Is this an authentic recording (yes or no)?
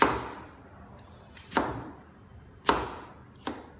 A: yes